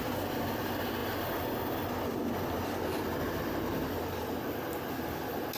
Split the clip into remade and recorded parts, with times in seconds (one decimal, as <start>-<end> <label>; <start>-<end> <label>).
0.0-5.6 recorded